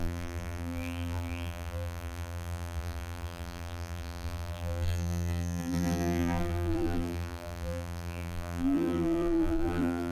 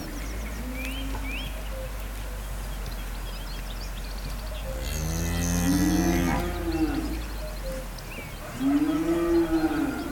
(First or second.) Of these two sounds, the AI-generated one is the first